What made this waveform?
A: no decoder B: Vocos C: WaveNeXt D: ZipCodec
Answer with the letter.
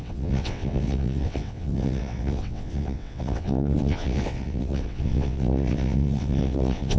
C